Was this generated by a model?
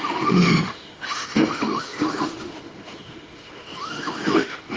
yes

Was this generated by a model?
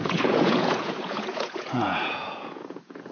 yes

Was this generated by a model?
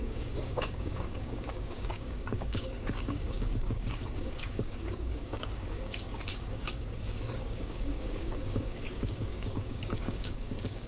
yes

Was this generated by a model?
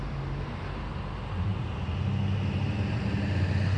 no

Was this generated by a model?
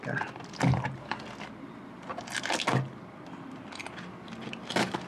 no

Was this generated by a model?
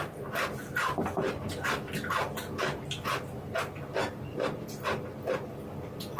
no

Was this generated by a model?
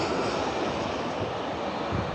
no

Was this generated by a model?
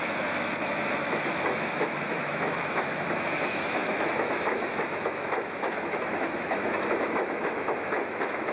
yes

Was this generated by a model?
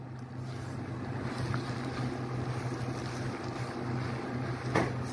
no